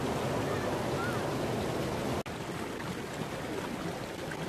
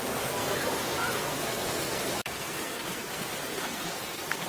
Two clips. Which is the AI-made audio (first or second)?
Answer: second